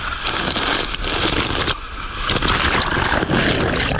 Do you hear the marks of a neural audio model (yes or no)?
no